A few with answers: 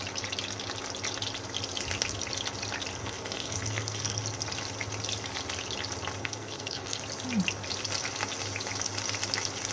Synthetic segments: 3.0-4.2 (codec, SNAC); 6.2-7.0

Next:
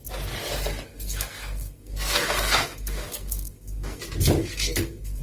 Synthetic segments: 0.9-4.0 (codec, SNAC); 4.4-5.2

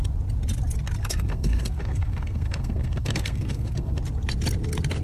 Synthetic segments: 1.0-4.0 (codec, SNAC)

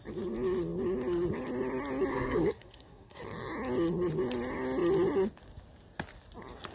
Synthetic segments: 2.1-3.2 (codec, SNAC)